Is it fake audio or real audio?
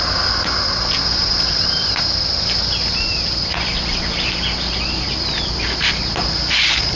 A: real